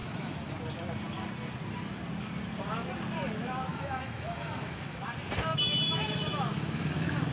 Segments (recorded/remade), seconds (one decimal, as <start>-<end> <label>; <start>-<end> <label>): 0.0-0.5 remade; 0.5-3.7 recorded; 3.7-5.0 remade; 5.0-5.5 recorded; 5.5-7.3 remade